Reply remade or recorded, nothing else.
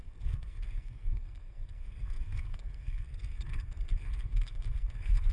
remade